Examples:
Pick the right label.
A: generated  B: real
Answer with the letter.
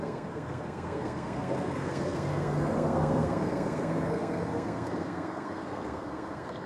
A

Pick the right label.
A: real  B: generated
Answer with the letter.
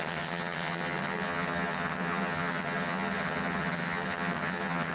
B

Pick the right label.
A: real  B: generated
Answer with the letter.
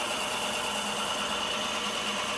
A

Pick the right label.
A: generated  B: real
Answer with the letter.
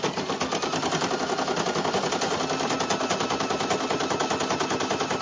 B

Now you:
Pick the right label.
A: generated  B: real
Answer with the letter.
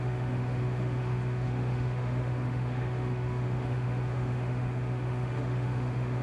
A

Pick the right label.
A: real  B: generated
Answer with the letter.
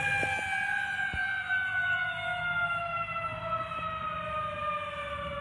A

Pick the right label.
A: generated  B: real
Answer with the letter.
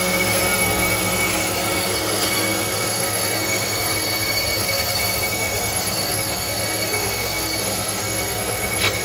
A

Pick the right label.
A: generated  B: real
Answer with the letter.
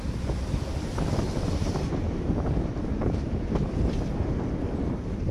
A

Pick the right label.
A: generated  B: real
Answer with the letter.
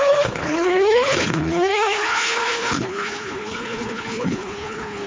A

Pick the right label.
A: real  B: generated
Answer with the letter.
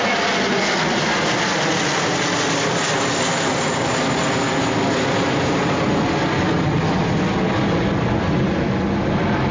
A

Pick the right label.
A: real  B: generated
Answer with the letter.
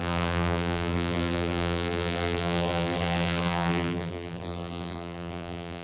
B